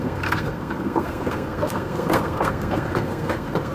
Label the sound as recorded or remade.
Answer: remade